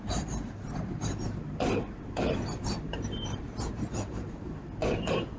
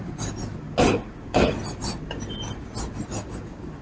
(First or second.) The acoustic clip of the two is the second